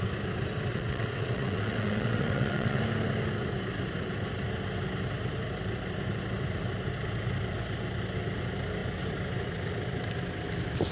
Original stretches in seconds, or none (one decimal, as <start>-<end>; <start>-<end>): 0.0-0.7; 2.8-10.9